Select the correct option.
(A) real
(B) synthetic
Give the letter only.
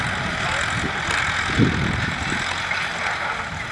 A